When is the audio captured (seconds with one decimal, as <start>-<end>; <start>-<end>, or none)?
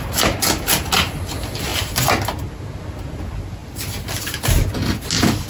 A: 0.0-5.5